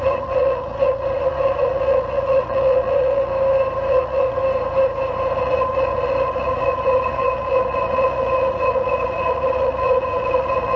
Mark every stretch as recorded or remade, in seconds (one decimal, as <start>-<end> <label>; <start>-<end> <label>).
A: 0.0-3.3 remade; 3.3-3.9 recorded; 3.9-4.4 remade; 4.4-5.4 recorded; 5.4-10.8 remade